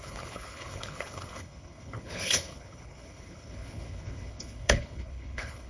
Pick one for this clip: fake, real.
fake